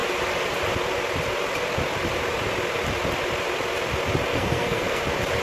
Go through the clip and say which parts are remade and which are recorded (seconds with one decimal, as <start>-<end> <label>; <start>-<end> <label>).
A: 0.0-4.3 recorded; 4.3-5.0 remade; 5.0-5.4 recorded